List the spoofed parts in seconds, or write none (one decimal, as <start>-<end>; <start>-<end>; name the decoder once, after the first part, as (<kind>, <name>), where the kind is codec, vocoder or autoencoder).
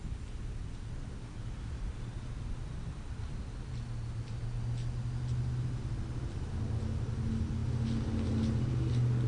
none